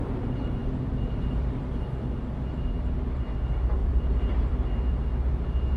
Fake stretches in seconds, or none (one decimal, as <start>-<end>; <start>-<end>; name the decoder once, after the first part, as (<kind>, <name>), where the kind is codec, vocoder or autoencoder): 0.6-2.2 (vocoder, BigVGAN v2); 3.8-4.5